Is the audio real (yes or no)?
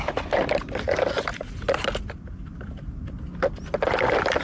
yes